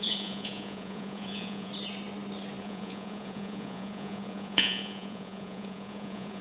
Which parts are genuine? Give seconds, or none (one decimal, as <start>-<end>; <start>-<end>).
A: 1.7-2.6